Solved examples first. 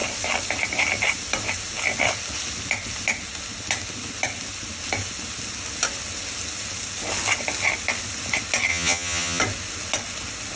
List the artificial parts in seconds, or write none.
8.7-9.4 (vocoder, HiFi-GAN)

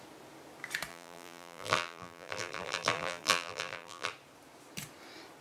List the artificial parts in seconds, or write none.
0.9-4.1 (vocoder, BigVGAN v2)

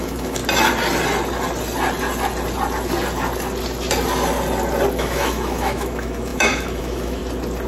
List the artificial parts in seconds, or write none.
0.0-0.4 (autoencoder, DAC-VAE); 5.0-7.2

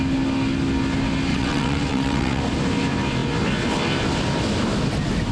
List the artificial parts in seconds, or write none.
1.3-2.4 (vocoder, WaveNeXt)

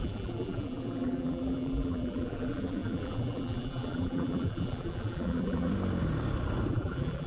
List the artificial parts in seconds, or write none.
0.0-5.7 (vocoder, BigVGAN v2); 6.7-7.3